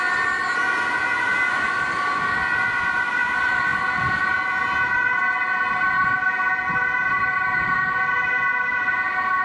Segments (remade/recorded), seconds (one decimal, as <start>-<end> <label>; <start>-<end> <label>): 0.0-9.4 recorded